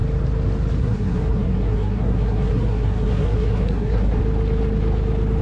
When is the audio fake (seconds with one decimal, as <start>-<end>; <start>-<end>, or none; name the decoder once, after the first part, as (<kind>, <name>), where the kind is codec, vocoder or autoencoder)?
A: 0.8-4.2 (codec, SNAC)